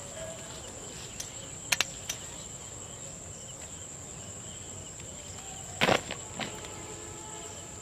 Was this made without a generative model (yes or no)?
yes